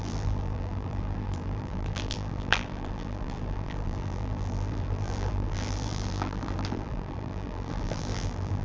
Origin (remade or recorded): remade